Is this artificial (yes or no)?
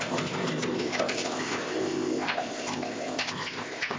yes